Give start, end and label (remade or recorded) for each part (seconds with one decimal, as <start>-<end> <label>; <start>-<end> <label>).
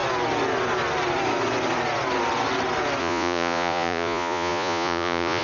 0.0-3.0 recorded; 3.0-5.4 remade